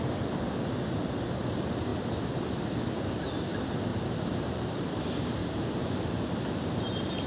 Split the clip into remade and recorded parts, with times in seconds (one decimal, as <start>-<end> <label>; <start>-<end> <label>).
0.0-3.9 recorded; 3.9-5.0 remade; 5.0-5.4 recorded; 5.4-7.3 remade